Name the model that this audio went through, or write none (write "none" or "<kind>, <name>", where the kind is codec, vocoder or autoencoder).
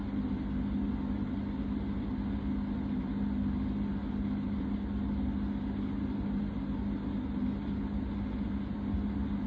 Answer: none